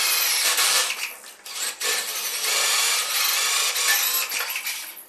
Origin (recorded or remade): recorded